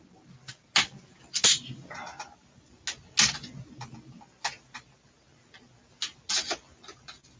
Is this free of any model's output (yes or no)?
yes